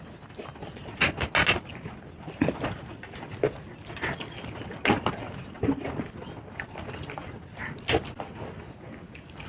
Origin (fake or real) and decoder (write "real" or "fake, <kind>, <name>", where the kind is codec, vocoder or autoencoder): real